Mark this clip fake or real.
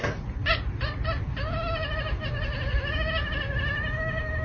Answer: real